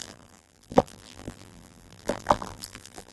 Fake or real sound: fake